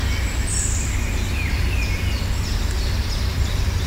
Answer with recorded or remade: recorded